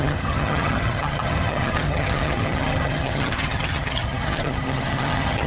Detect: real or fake fake